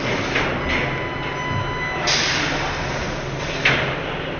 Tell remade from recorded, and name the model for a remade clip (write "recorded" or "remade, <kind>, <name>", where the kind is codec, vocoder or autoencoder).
recorded